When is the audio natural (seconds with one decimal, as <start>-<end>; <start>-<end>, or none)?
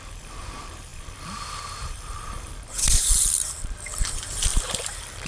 none